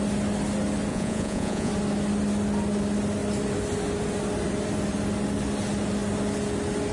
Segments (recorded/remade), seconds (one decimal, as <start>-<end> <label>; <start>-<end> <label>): 0.0-0.9 recorded; 0.9-1.7 remade; 1.7-6.9 recorded